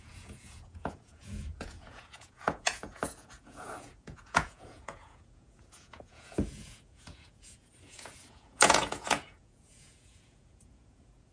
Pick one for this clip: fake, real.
fake